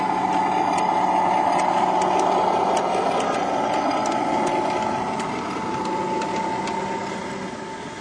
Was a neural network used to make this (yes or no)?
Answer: no